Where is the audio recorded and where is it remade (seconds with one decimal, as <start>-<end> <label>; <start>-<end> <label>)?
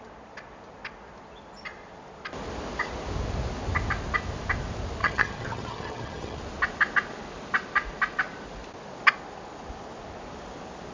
0.0-5.0 recorded; 5.0-6.4 remade; 6.4-10.9 recorded